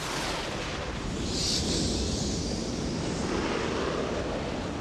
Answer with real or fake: real